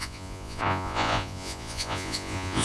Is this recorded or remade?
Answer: remade